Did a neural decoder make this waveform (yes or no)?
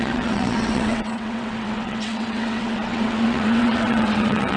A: yes